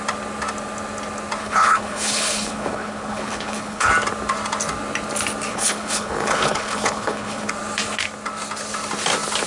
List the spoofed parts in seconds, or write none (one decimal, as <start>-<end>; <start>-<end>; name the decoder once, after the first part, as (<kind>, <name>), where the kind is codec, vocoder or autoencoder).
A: 1.4-3.9 (codec, HILCodec); 5.5-7.5

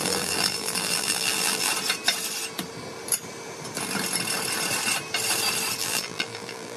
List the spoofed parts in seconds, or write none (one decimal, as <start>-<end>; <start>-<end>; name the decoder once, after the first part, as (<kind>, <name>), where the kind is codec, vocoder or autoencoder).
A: 0.0-1.7 (vocoder, BigVGAN v2); 5.8-6.8

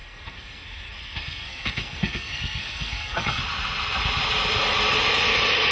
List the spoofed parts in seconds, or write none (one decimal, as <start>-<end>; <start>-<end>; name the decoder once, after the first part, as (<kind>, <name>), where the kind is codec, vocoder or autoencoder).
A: 0.0-3.4 (codec, SNAC)

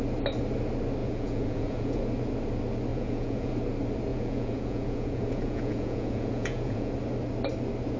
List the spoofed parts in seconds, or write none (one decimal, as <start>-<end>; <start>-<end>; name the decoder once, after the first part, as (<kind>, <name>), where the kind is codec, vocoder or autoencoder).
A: 1.0-2.0 (vocoder, Vocos); 2.9-3.5; 4.1-6.9